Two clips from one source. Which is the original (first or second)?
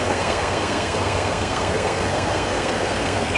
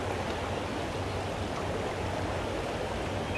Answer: second